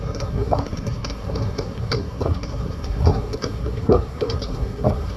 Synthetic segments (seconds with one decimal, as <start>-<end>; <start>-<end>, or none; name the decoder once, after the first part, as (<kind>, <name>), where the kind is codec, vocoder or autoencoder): 0.0-5.2 (codec, SNAC)